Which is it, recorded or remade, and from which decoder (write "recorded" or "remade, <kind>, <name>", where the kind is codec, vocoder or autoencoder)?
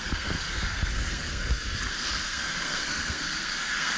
remade, codec, SNAC